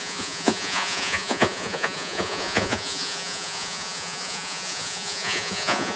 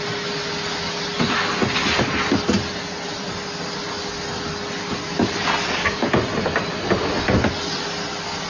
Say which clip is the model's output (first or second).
first